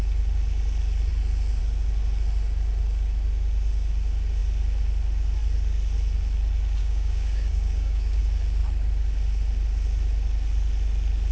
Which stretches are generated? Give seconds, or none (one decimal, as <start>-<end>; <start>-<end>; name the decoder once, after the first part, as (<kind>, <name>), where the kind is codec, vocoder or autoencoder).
6.8-8.2 (codec, DAC)

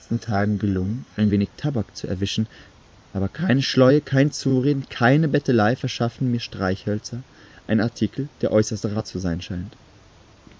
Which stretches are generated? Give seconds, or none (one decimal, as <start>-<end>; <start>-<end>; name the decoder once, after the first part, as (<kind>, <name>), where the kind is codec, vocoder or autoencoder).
0.0-1.3 (codec, SNAC)

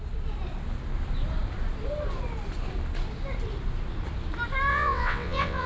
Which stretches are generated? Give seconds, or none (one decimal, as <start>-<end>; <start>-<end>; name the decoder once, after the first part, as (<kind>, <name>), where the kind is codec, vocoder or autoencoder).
4.7-5.7 (vocoder, WaveNeXt)